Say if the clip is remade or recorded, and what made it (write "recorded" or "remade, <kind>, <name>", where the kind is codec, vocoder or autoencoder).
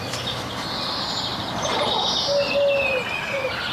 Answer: recorded